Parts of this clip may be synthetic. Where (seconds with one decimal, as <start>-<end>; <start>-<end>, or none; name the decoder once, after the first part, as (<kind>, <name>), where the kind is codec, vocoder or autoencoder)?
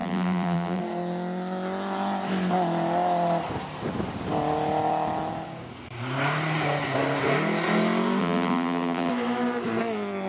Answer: 0.0-0.8 (vocoder, BigVGAN v2); 8.2-9.1